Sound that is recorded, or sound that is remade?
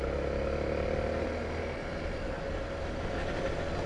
recorded